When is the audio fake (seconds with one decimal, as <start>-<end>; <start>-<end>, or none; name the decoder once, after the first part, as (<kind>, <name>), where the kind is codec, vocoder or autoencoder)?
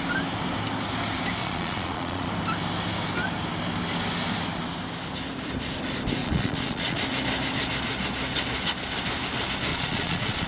1.4-2.3 (vocoder, Vocos); 6.2-7.0; 9.7-10.5